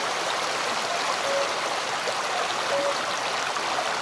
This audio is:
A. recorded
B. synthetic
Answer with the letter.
A